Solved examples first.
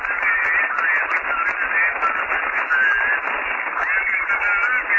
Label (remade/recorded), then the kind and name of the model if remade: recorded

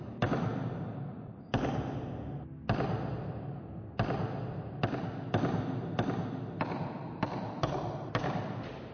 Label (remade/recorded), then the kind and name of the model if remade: recorded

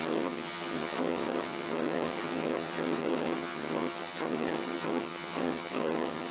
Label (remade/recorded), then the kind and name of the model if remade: remade, vocoder, HiFi-GAN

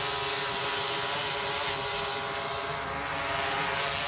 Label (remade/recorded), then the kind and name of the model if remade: recorded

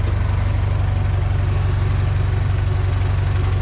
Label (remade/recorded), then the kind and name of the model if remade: recorded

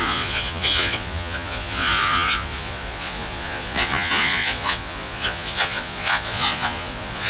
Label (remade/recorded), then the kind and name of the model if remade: remade, vocoder, Vocos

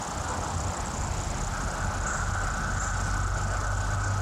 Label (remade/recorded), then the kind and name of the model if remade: recorded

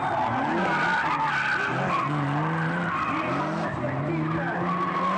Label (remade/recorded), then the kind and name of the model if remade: recorded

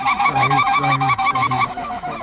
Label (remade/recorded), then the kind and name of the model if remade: remade, autoencoder, DAC-VAE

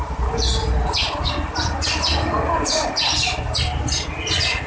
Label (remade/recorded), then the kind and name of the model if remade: recorded